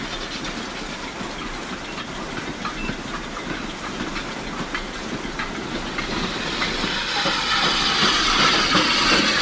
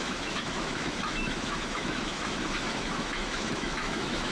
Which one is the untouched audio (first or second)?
first